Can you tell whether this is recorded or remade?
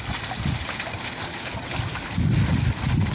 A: recorded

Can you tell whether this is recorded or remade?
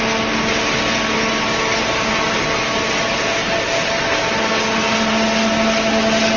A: recorded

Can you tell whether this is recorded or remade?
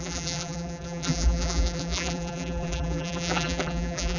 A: remade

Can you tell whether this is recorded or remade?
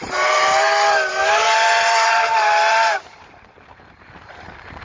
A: remade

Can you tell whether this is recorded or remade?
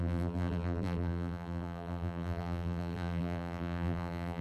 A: remade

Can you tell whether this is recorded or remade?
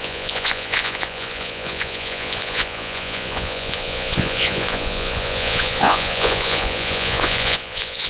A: remade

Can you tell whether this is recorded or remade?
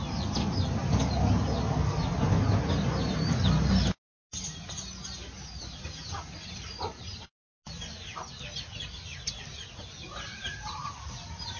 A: recorded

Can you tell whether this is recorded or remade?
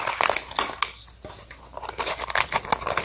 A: recorded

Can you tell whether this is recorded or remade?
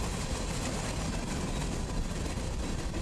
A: recorded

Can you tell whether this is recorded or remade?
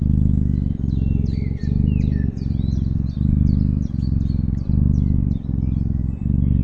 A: recorded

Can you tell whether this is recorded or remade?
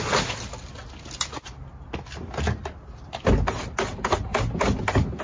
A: recorded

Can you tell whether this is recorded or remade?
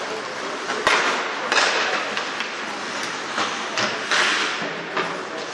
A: recorded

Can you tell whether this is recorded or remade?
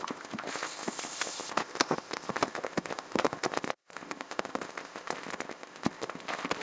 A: remade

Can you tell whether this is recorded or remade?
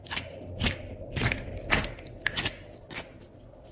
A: recorded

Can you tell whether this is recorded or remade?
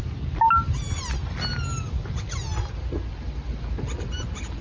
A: recorded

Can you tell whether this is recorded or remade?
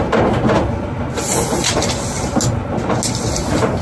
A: recorded